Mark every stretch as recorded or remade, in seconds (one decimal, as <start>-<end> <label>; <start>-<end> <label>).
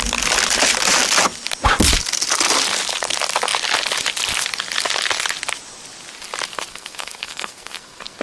0.0-6.7 recorded; 6.7-8.2 remade